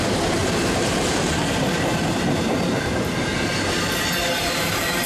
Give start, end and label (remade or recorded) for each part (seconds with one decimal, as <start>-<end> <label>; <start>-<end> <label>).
0.0-0.4 recorded; 0.4-3.2 remade; 3.2-4.4 recorded; 4.4-5.1 remade